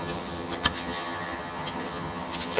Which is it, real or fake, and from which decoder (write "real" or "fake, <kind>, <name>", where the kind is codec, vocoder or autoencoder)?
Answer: fake, vocoder, HiFi-GAN